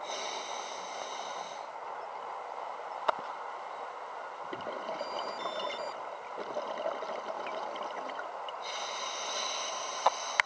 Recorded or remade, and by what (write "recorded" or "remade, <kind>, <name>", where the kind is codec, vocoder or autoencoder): recorded